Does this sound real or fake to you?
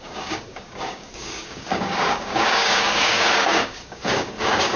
fake